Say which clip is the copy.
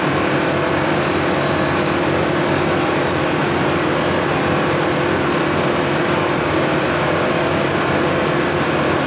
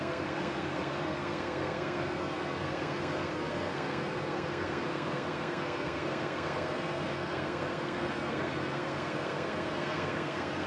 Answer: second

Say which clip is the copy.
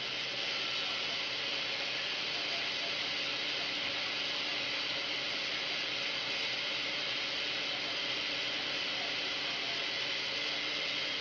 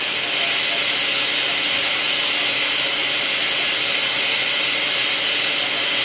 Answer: first